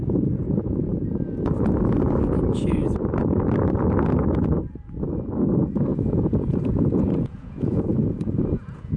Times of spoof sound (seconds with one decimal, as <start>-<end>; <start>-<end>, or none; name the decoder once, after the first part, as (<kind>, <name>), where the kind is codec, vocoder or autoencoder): 0.0-0.9 (vocoder, Vocos); 5.5-9.0